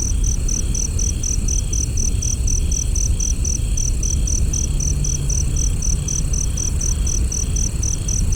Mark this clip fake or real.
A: real